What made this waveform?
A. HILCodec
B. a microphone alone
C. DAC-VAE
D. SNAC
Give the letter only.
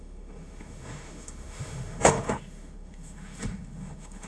C